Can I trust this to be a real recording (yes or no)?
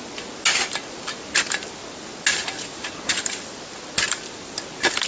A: yes